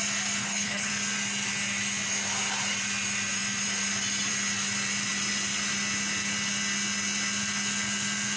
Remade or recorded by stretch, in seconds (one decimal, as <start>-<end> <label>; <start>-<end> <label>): 0.0-0.4 recorded; 0.4-0.9 remade; 0.9-8.4 recorded